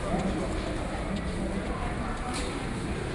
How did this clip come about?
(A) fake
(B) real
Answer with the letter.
B